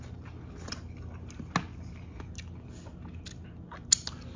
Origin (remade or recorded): recorded